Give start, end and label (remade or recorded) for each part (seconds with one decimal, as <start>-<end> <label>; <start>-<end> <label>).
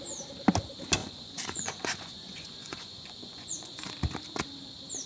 0.0-1.0 recorded; 1.0-3.9 remade; 3.9-5.1 recorded